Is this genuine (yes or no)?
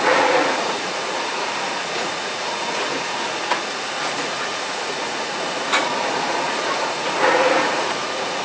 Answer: no